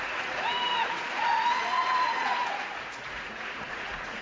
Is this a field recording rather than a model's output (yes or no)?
no